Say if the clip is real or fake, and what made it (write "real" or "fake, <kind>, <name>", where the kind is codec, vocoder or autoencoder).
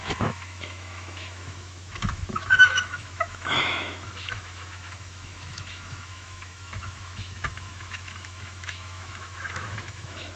fake, autoencoder, DAC-VAE